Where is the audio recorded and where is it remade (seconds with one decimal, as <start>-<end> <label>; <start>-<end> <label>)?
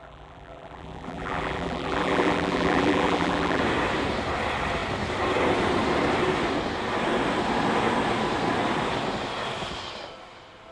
0.0-3.6 remade; 3.6-10.7 recorded